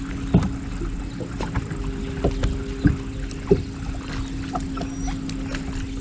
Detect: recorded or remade recorded